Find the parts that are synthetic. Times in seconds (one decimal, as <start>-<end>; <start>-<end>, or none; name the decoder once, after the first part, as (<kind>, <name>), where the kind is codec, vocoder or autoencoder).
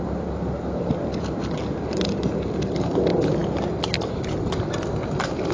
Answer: none